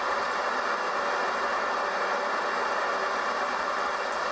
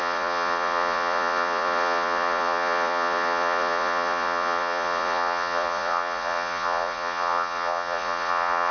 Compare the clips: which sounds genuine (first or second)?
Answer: first